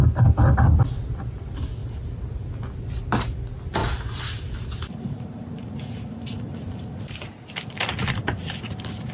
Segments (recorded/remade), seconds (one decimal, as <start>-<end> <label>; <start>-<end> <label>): 0.0-1.8 recorded; 1.8-2.5 remade; 2.5-3.8 recorded; 3.8-7.0 remade; 7.0-9.1 recorded